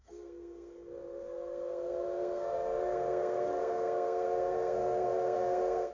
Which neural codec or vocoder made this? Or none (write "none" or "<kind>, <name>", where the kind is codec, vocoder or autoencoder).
codec, SNAC